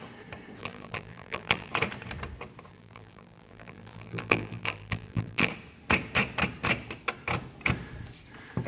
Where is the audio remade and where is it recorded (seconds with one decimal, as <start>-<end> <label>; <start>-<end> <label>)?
0.0-0.6 recorded; 0.6-1.7 remade; 1.7-2.7 recorded; 2.7-5.5 remade; 5.5-8.7 recorded